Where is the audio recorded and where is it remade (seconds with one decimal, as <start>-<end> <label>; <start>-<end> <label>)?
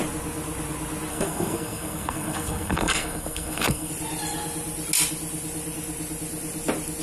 0.0-1.1 recorded; 1.1-3.9 remade; 3.9-7.0 recorded